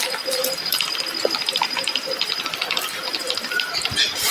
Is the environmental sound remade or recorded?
recorded